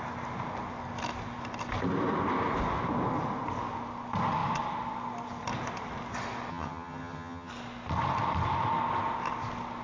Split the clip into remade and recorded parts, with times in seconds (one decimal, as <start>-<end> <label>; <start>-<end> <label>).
0.0-6.5 recorded; 6.5-7.5 remade; 7.5-9.8 recorded